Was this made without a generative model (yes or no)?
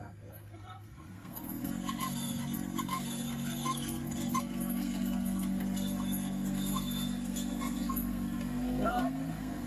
no